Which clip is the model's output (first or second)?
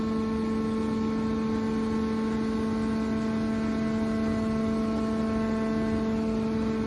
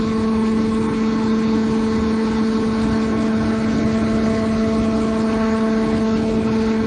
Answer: second